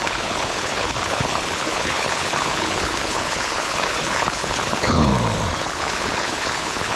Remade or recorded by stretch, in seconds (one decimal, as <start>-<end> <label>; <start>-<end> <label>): 0.0-5.1 remade; 5.1-5.6 recorded; 5.6-7.0 remade